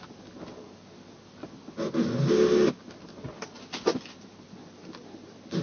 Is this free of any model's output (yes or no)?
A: yes